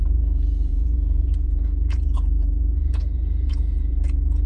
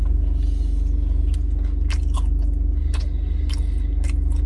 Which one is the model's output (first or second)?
first